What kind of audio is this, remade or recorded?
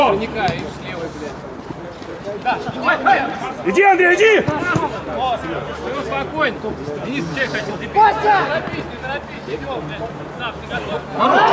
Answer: recorded